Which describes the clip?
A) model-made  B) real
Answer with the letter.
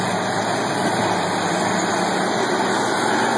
A